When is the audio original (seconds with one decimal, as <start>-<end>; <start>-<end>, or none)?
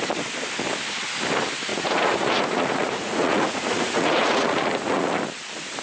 0.0-1.7; 5.2-5.8